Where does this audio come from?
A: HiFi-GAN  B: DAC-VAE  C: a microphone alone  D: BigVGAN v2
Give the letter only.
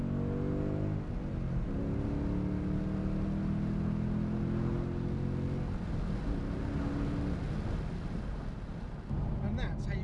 C